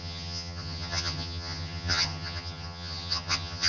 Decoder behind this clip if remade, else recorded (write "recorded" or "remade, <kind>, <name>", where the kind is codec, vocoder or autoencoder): remade, vocoder, HiFi-GAN